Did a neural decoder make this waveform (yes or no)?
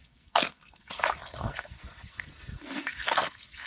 yes